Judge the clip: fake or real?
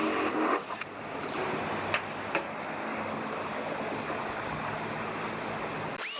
real